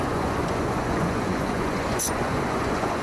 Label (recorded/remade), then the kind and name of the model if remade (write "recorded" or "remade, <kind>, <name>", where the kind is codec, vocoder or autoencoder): remade, vocoder, Vocos